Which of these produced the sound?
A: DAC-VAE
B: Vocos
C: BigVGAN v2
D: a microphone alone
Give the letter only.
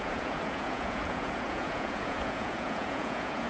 B